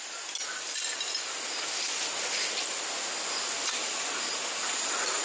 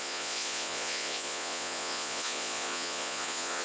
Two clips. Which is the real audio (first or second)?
first